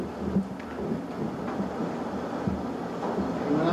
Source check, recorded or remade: recorded